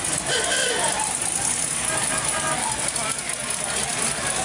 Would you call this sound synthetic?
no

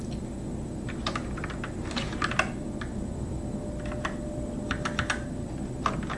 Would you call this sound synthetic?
no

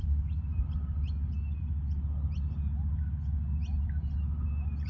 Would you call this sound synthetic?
no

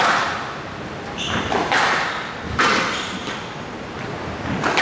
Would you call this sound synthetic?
no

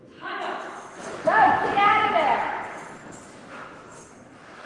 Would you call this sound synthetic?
yes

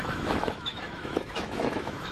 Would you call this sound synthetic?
yes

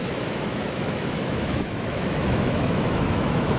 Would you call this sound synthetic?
yes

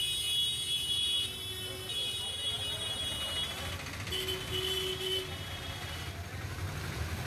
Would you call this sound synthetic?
no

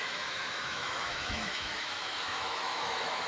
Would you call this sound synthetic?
yes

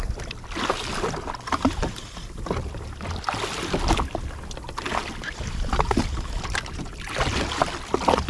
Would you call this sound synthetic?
no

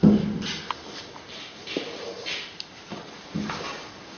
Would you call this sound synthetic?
no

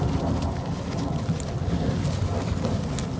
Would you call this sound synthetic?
no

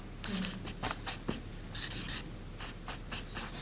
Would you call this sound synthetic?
no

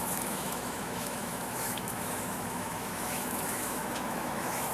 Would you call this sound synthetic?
yes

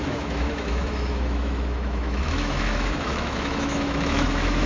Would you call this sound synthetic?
yes